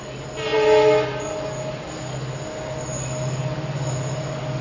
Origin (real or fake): real